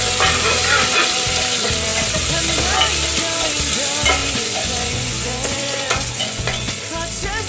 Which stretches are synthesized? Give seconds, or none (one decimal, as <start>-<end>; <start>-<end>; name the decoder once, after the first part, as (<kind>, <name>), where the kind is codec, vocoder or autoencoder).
4.2-6.8 (vocoder, Vocos)